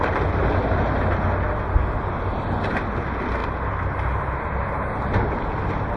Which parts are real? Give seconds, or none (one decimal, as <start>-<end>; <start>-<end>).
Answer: 0.0-6.0